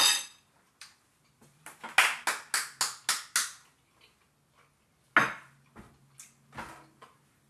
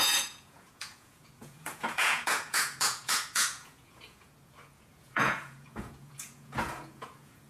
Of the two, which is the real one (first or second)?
first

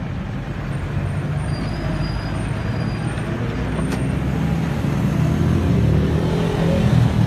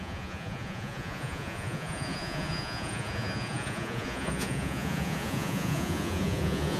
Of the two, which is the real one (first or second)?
first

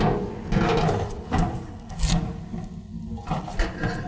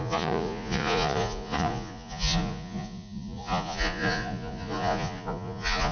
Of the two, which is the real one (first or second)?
first